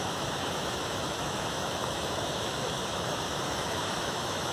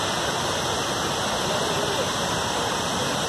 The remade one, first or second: first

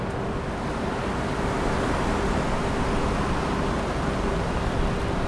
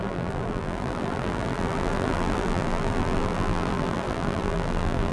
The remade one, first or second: second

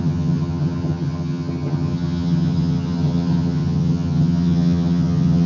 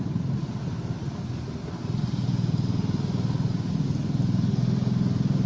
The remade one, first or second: first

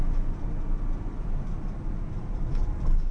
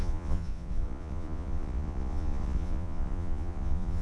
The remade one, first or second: second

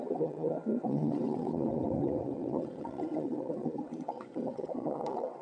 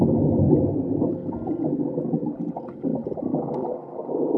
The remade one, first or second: first